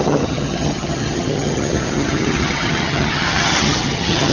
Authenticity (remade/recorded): remade